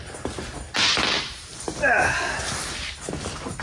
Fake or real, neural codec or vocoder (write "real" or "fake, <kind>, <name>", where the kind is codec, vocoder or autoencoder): real